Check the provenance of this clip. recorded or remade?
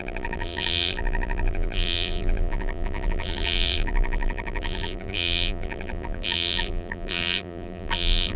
remade